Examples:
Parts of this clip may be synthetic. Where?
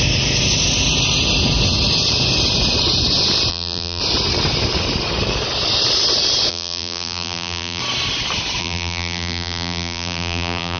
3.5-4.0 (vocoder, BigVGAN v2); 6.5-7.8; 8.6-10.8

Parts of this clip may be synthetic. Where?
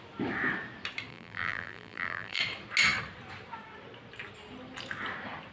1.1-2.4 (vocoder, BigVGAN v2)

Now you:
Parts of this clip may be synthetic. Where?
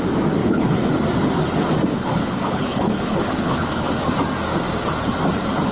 0.4-1.0 (codec, HILCodec); 1.9-3.9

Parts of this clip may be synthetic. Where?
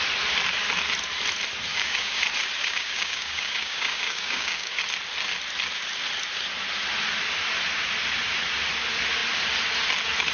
1.7-2.2 (codec, DAC); 2.6-4.8